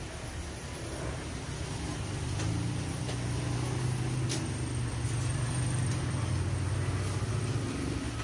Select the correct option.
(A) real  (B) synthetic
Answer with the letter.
A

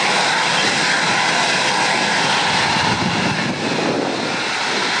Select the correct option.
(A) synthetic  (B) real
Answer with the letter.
B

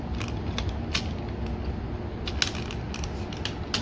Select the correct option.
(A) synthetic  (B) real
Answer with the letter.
B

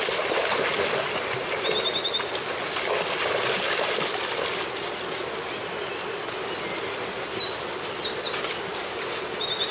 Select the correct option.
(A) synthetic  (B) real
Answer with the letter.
B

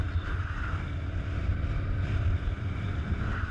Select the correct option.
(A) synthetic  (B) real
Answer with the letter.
A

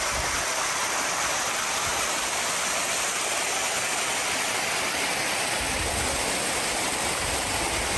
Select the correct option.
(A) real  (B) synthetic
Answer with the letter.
A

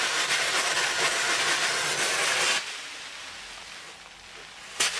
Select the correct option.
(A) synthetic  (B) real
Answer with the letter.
B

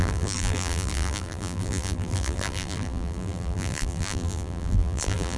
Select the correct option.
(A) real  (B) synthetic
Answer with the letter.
B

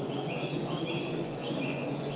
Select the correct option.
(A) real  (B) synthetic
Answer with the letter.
B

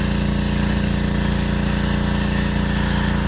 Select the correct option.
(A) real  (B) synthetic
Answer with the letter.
A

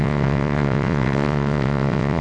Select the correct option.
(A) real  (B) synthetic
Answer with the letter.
B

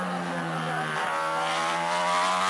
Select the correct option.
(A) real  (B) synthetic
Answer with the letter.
A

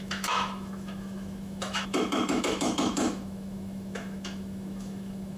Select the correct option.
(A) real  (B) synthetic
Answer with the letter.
B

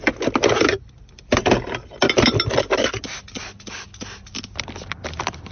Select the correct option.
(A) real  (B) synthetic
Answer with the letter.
A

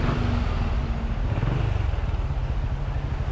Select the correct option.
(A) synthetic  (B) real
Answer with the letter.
B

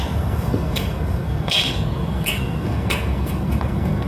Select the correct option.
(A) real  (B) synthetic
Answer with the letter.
B